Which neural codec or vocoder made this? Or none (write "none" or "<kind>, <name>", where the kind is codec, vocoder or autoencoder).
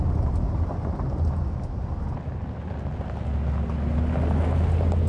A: none